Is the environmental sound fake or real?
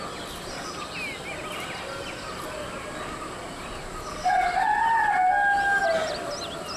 real